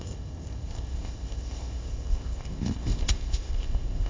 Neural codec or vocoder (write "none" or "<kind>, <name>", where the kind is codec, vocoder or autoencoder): codec, ZipCodec